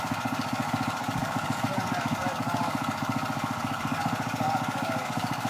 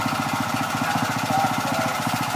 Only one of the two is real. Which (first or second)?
second